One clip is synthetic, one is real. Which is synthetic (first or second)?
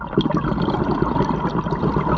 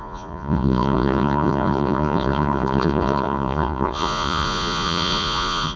second